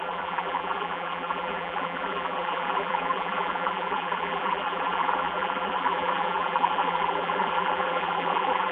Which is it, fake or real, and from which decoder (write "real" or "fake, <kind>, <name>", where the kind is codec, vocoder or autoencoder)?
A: fake, vocoder, BigVGAN v2